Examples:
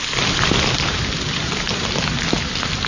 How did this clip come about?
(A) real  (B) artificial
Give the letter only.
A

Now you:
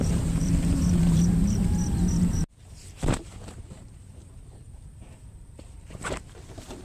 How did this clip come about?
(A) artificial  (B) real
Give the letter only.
A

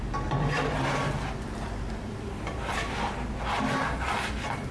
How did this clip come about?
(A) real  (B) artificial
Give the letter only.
B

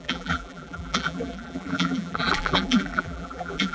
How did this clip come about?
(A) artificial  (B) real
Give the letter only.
A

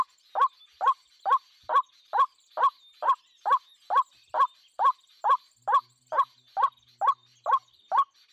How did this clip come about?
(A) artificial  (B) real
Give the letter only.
B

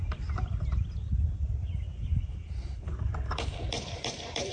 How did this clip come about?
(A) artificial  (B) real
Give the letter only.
A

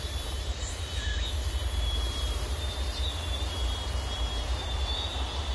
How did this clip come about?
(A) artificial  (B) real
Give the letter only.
A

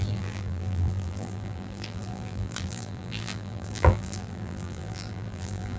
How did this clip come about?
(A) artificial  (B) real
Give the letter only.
A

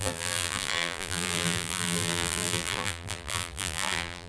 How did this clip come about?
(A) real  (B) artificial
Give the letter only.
B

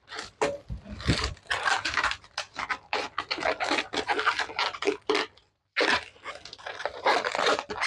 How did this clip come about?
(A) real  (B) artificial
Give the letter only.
B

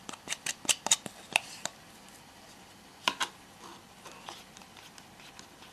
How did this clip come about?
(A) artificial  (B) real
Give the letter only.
B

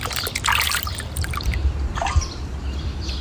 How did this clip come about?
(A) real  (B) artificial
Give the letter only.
B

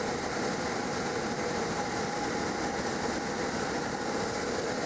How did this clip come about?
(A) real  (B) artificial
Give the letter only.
A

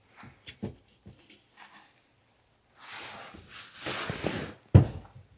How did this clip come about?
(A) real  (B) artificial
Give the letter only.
A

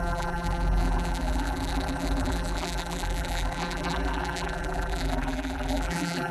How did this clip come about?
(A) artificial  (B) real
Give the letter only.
A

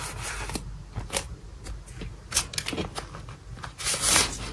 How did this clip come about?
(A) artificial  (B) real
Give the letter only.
B